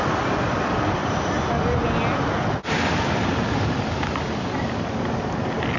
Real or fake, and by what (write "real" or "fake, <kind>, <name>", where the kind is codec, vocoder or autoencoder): real